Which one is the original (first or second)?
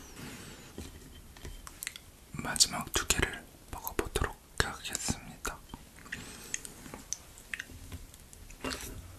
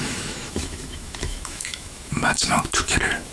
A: first